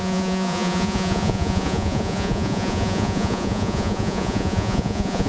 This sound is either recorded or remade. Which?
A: remade